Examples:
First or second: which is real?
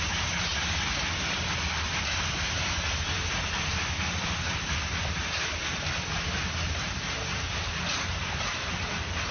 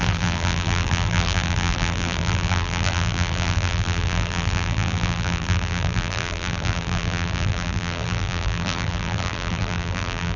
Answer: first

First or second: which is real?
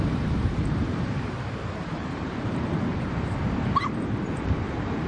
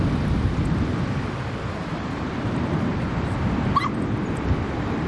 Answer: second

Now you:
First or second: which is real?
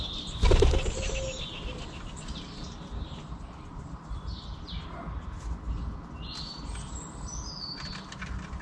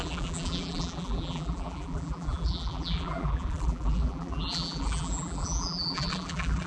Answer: first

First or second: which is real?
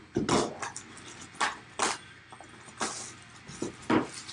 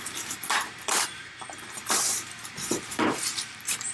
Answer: first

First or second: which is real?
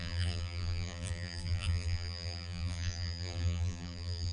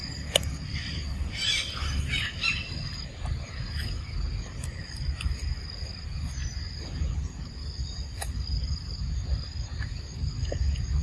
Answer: second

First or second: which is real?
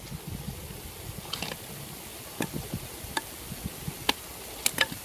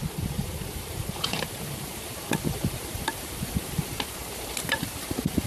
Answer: first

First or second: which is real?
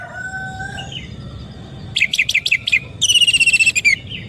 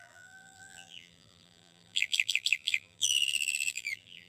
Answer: first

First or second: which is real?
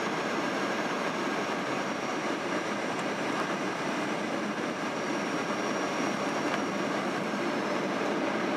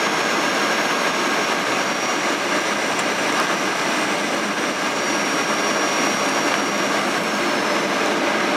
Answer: second